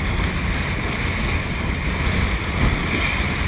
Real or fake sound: real